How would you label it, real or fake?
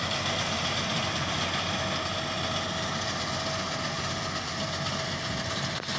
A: real